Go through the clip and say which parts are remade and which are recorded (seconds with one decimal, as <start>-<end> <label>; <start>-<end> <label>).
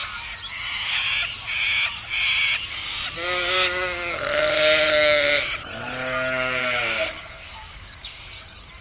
0.0-6.6 recorded; 6.6-8.2 remade; 8.2-8.8 recorded